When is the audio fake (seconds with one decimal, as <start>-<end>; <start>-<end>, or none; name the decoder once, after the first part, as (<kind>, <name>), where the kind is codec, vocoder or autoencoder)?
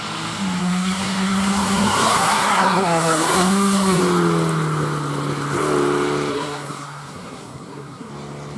0.6-4.0 (codec, SNAC); 6.3-8.1